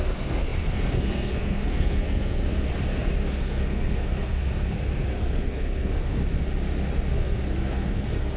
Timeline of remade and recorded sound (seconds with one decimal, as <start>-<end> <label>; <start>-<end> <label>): 0.0-2.7 remade; 2.7-3.3 recorded; 3.3-6.2 remade; 6.2-7.1 recorded; 7.1-8.4 remade